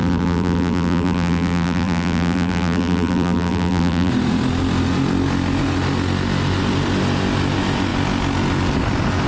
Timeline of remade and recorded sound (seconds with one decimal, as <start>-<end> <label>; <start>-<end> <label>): 0.0-4.1 remade; 4.1-9.3 recorded